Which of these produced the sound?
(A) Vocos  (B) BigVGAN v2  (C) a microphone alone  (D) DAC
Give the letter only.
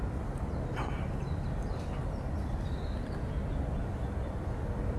C